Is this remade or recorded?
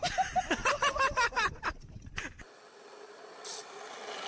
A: recorded